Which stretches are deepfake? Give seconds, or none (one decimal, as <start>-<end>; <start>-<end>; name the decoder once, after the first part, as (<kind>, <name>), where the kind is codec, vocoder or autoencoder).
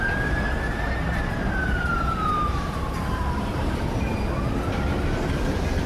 0.0-4.1 (vocoder, BigVGAN v2)